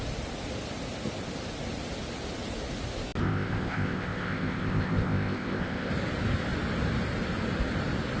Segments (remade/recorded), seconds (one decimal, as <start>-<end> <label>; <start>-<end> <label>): 0.0-3.2 recorded; 3.2-5.9 remade; 5.9-8.2 recorded